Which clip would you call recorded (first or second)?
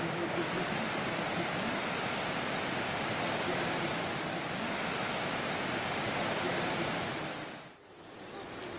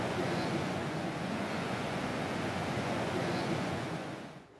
first